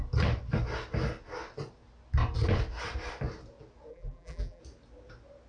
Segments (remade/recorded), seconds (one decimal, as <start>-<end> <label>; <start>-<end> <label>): 0.0-3.9 recorded; 3.9-4.6 remade; 4.6-5.5 recorded